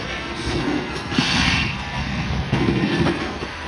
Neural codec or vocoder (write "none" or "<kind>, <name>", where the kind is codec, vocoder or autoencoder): codec, SNAC